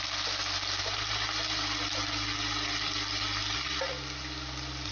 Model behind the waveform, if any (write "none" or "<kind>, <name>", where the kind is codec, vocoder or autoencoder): none